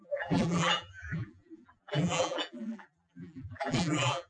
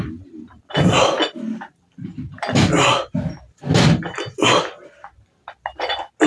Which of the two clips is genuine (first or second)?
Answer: second